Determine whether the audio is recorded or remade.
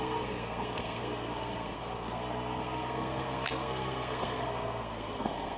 remade